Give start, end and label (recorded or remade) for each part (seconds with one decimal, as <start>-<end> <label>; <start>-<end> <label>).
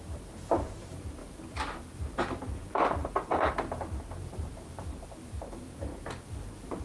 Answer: 0.0-3.0 remade; 3.0-4.2 recorded; 4.2-5.9 remade; 5.9-6.8 recorded